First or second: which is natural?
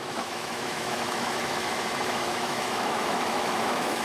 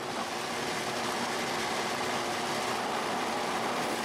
second